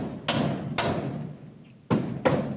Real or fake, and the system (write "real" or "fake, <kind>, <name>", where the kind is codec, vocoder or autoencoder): real